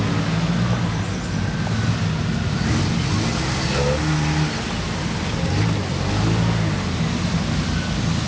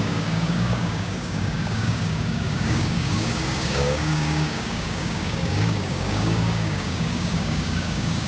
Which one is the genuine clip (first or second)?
first